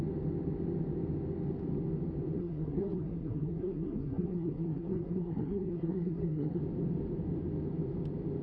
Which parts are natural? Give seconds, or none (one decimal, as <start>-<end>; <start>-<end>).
0.0-2.4; 6.6-8.4